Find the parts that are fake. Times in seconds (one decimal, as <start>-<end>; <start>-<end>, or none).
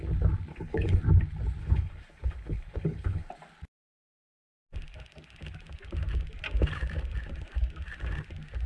0.5-1.0; 1.6-3.3